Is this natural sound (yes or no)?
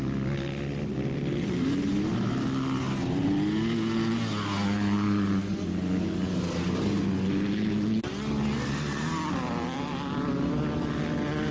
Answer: yes